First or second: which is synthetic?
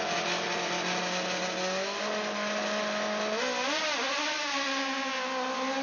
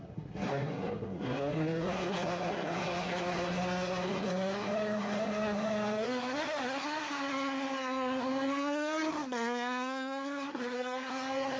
second